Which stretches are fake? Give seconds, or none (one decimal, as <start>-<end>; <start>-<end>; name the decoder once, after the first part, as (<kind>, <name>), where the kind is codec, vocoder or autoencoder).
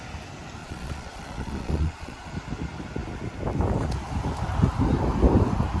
0.6-2.3 (vocoder, Vocos)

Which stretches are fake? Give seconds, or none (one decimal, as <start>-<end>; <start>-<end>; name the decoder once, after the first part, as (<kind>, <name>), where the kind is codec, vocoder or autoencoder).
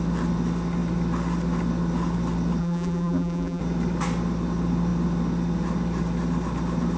2.6-3.6 (vocoder, BigVGAN v2)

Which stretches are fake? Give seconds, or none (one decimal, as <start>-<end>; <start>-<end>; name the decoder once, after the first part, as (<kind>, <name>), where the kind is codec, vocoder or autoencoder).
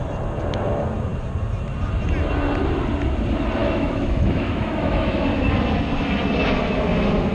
3.6-5.2 (autoencoder, DAC-VAE)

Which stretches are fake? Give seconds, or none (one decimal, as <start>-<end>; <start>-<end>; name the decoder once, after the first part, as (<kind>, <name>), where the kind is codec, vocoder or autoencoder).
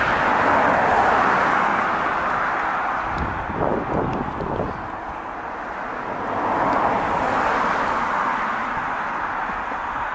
none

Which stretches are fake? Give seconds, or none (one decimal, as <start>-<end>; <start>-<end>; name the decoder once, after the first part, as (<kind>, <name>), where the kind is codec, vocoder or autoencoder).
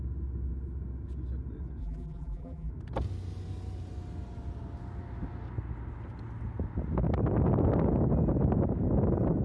1.8-2.7 (vocoder, BigVGAN v2)